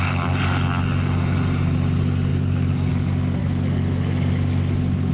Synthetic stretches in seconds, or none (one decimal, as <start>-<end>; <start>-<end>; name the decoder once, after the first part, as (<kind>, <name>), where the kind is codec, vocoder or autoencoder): none